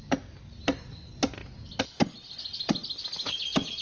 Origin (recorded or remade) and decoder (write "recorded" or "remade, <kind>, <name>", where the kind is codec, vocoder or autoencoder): recorded